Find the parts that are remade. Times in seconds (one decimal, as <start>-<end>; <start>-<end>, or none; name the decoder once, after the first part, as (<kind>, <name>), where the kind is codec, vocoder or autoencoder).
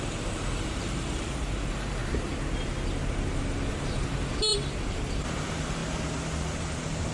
0.0-2.0 (vocoder, BigVGAN v2); 3.7-4.5; 5.2-5.8; 6.6-7.1